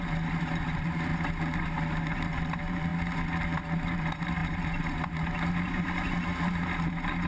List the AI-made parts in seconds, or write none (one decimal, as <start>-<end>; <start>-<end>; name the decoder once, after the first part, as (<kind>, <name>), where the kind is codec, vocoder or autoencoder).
0.0-1.1 (vocoder, BigVGAN v2); 2.0-7.3